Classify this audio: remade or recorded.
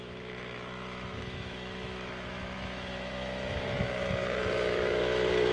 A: remade